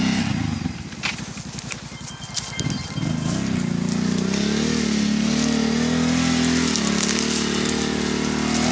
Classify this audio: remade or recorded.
recorded